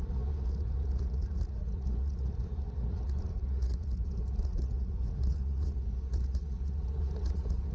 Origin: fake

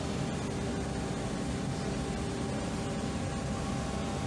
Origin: real